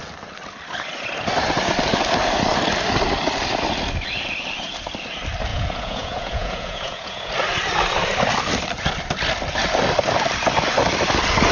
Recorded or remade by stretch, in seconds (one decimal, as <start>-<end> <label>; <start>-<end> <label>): 0.0-5.5 recorded; 5.5-7.3 remade; 7.3-11.5 recorded